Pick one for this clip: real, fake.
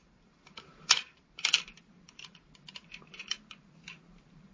fake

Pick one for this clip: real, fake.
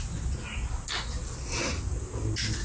real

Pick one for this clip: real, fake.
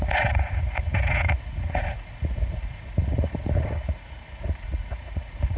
fake